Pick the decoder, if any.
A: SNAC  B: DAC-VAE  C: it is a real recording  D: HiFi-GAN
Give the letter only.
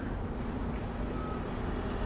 C